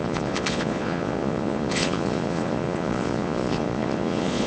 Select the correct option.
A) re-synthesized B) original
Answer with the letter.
A